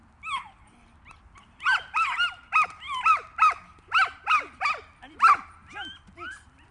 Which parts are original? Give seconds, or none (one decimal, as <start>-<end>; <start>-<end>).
0.0-6.7